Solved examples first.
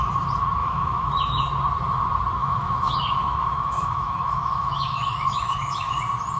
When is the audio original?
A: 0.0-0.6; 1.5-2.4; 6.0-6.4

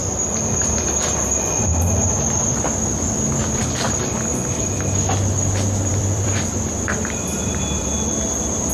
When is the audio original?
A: 0.0-5.9; 6.7-8.7

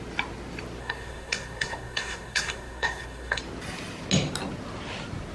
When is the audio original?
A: 0.0-0.8; 3.4-5.3

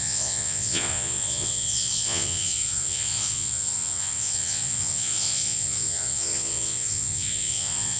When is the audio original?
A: none

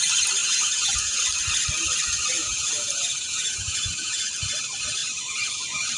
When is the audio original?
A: 0.0-0.4; 1.2-2.4; 4.2-6.0

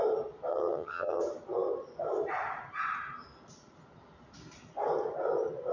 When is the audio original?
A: 0.0-0.5; 1.2-5.7

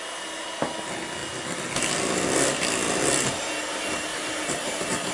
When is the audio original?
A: 0.0-4.1

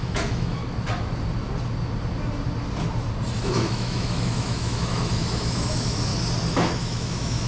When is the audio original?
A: 0.6-3.4; 6.1-6.8